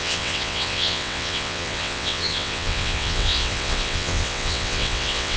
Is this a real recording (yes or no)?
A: no